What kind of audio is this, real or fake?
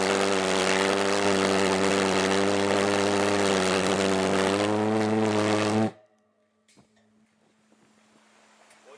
real